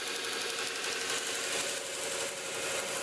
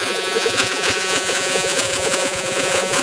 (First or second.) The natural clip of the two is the first